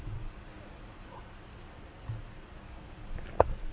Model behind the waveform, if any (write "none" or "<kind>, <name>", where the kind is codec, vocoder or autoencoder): none